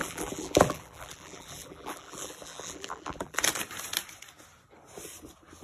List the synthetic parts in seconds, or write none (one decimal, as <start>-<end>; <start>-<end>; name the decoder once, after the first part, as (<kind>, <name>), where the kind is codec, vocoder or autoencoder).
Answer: 0.0-3.4 (vocoder, BigVGAN v2)